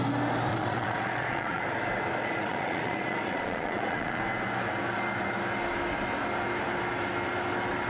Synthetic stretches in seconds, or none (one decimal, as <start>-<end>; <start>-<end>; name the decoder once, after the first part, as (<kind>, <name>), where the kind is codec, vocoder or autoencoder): 0.5-1.6 (vocoder, Vocos); 2.2-4.2